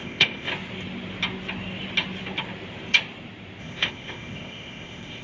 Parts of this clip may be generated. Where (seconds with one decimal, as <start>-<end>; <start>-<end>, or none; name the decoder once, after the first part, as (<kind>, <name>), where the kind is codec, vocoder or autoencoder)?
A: 0.0-0.5 (codec, ZipCodec); 3.6-5.2